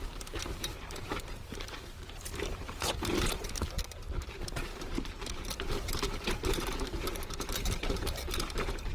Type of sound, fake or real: fake